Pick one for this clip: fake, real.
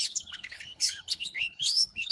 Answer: fake